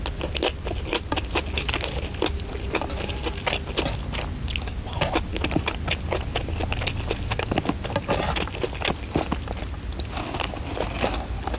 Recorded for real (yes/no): yes